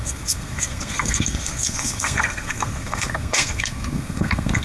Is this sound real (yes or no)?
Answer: no